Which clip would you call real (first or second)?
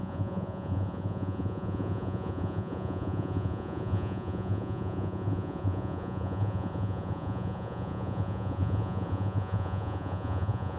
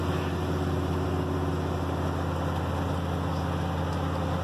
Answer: second